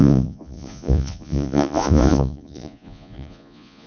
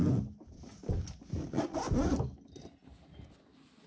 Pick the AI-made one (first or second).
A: first